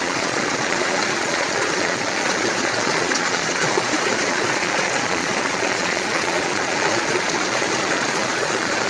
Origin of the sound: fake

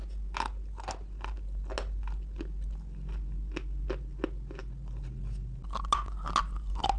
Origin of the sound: real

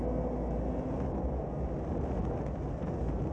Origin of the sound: real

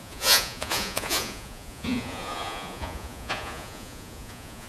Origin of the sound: fake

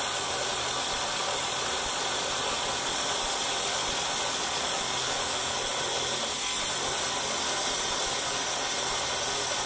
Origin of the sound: real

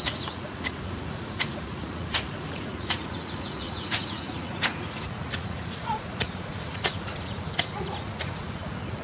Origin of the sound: fake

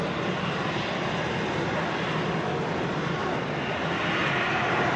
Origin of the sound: real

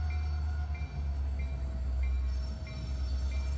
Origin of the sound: real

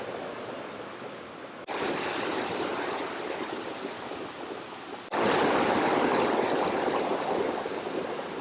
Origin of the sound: real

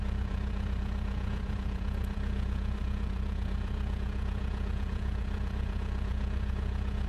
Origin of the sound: fake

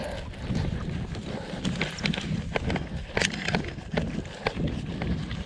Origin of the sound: real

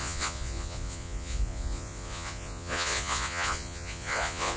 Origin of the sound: fake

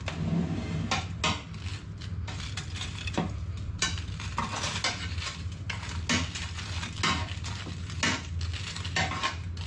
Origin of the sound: real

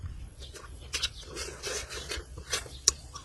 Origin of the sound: fake